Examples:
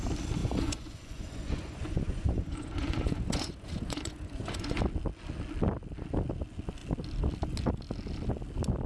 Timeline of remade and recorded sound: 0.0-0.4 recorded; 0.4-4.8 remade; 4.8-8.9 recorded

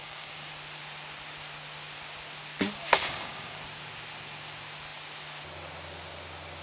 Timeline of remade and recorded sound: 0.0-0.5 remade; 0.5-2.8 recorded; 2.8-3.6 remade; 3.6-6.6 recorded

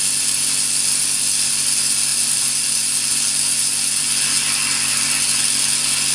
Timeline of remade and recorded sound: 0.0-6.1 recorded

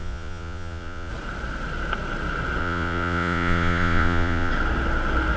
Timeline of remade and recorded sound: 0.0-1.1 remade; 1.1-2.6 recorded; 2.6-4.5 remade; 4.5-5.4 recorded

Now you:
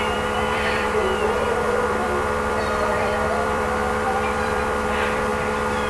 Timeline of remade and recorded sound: 0.0-5.3 remade; 5.3-5.9 recorded

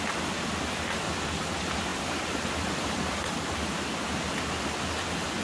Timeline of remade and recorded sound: 0.0-5.4 recorded